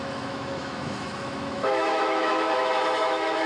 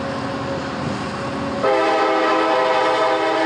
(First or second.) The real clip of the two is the second